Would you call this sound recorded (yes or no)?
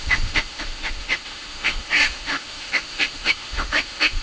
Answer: no